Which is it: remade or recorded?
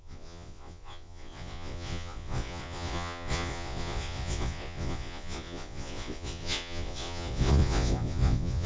remade